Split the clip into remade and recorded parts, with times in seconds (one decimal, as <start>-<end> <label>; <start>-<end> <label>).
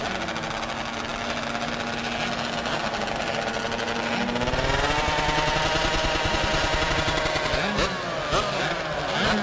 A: 0.0-9.4 recorded